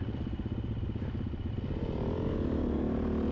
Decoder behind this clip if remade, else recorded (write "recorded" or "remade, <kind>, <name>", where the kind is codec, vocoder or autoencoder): recorded